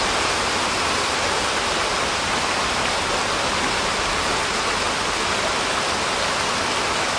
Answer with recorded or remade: recorded